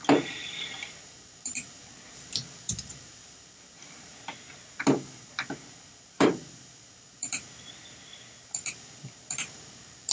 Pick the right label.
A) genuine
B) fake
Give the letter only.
B